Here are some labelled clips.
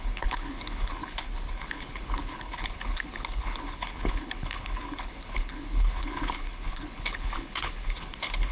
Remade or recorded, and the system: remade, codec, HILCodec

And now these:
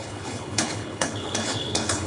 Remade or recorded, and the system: remade, codec, HILCodec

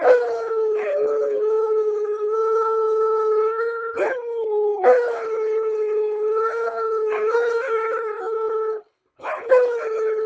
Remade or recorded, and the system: remade, codec, HILCodec